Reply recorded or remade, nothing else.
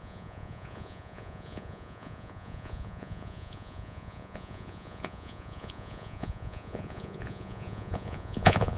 remade